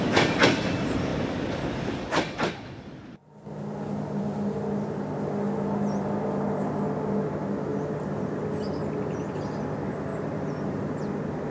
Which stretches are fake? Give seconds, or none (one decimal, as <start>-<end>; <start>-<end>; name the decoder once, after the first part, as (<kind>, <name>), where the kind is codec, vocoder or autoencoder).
10.1-10.8 (vocoder, BigVGAN v2)